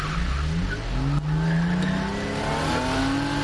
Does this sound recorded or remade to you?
recorded